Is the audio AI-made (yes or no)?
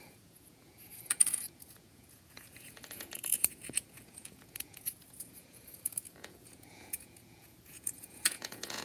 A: yes